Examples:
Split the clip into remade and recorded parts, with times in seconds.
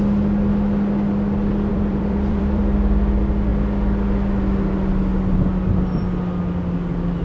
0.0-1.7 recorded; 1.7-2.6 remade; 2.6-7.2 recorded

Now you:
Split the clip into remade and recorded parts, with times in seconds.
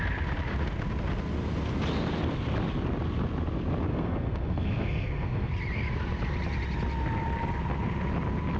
0.0-3.9 recorded; 3.9-5.5 remade; 5.5-8.6 recorded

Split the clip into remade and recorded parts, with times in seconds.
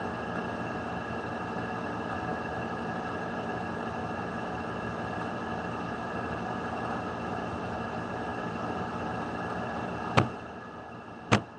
0.0-11.6 recorded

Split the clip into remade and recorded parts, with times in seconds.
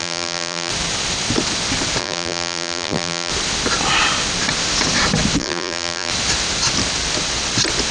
0.0-0.7 remade; 0.7-2.0 recorded; 2.0-3.3 remade; 3.3-5.4 recorded; 5.4-6.1 remade; 6.1-7.9 recorded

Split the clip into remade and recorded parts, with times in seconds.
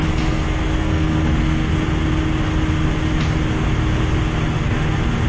0.0-1.7 remade; 1.7-5.3 recorded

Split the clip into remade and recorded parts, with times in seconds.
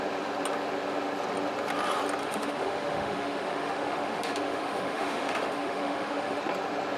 0.0-2.2 recorded; 2.2-6.4 remade; 6.4-7.0 recorded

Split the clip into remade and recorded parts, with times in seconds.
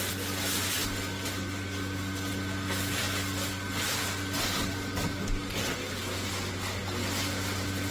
0.0-7.9 recorded